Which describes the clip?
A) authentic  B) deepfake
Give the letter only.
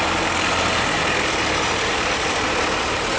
A